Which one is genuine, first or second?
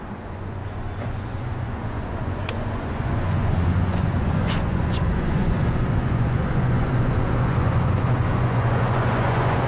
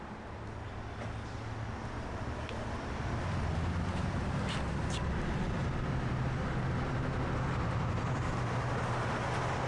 second